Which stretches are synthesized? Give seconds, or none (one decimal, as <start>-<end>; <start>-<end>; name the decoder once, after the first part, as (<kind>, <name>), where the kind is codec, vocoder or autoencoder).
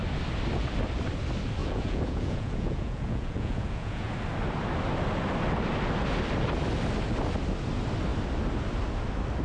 1.6-4.1 (vocoder, Vocos)